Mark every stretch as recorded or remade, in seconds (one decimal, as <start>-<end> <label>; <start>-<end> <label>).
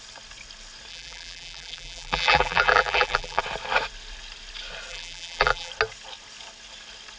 0.0-0.9 recorded; 0.9-3.4 remade; 3.4-4.9 recorded; 4.9-5.7 remade; 5.7-7.2 recorded